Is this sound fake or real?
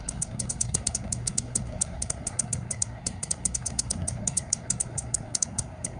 fake